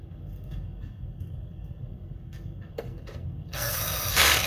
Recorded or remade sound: remade